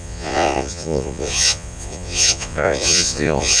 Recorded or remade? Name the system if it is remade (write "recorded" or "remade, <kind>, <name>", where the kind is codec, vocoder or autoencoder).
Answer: remade, vocoder, Vocos